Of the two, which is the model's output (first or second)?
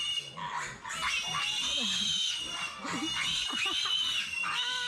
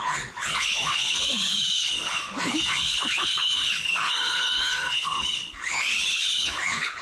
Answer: second